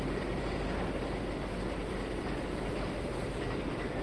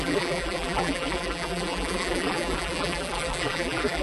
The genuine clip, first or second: first